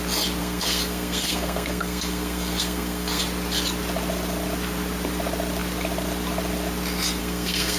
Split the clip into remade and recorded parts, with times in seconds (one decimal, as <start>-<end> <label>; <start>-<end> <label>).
0.0-0.4 recorded; 0.4-3.2 remade; 3.2-7.2 recorded; 7.2-7.8 remade